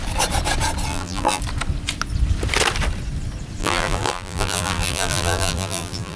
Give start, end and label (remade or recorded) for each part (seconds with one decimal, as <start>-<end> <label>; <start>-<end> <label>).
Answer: 0.0-0.9 recorded; 0.9-1.4 remade; 1.4-3.6 recorded; 3.6-6.2 remade